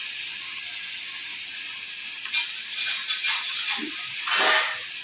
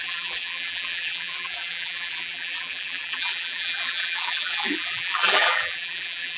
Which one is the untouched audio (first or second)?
first